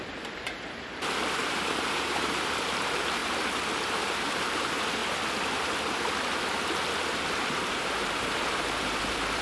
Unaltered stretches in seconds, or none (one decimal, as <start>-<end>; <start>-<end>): 3.2-3.9; 5.0-7.6